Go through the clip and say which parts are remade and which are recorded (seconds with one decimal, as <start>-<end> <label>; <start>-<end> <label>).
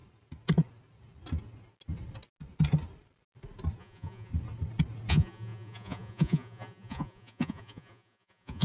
0.0-3.8 recorded; 3.8-4.3 remade; 4.3-5.1 recorded; 5.1-8.6 remade